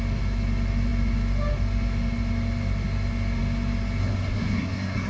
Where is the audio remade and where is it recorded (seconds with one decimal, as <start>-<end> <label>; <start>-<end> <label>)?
0.0-4.0 recorded; 4.0-5.1 remade